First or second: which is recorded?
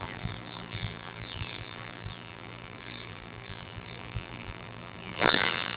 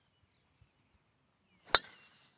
second